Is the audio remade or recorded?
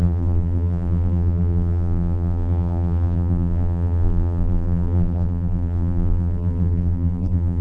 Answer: remade